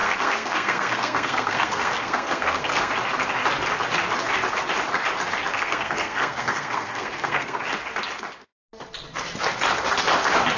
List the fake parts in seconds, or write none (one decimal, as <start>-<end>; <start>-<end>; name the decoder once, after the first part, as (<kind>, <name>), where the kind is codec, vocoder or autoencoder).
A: 0.0-2.9 (codec, SNAC); 5.5-7.6